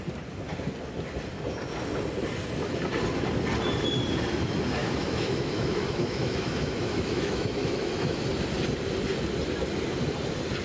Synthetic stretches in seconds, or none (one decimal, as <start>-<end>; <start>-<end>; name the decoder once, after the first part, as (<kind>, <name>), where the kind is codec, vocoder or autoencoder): 4.8-8.3 (autoencoder, DAC-VAE)